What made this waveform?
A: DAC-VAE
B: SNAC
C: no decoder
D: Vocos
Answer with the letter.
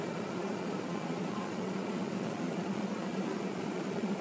D